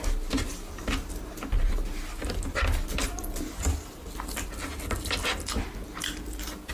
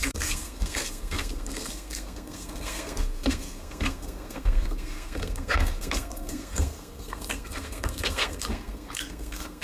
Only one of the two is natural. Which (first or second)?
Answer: first